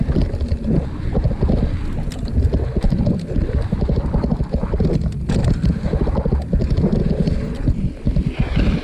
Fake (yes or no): no